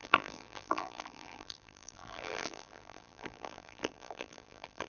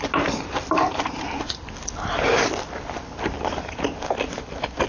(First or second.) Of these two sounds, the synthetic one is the first